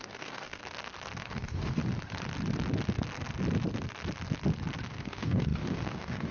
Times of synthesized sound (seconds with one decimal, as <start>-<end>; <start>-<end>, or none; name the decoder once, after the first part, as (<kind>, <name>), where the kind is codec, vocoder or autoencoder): 0.0-0.6 (codec, DAC); 1.2-1.8; 4.9-6.3

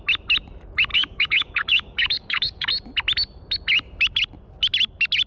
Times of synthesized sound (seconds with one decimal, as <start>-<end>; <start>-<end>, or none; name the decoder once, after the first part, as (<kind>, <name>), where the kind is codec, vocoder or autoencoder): 0.9-2.7 (codec, DAC)

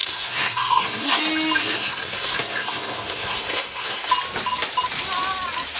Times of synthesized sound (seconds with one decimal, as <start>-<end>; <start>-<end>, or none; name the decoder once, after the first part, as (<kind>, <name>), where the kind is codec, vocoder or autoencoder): 0.0-1.2 (codec, SNAC); 1.6-4.1

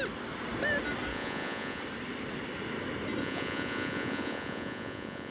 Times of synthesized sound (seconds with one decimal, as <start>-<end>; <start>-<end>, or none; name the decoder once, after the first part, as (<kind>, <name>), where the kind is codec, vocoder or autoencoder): 1.1-1.8 (vocoder, Vocos); 3.2-5.3